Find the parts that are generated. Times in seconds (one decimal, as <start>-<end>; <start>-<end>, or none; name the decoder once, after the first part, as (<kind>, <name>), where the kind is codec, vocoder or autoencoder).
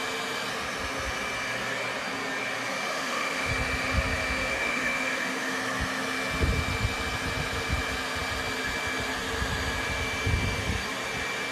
2.9-3.5 (autoencoder, DAC-VAE); 4.5-5.5